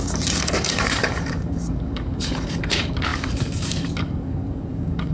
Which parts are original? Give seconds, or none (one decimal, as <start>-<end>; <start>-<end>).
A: none